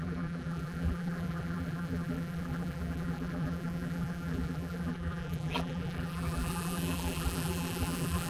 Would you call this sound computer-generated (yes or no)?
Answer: yes